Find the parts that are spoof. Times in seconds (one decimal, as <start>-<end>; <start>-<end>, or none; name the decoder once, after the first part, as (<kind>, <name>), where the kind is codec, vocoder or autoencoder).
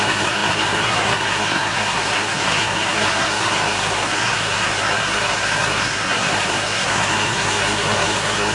0.0-8.5 (codec, SNAC)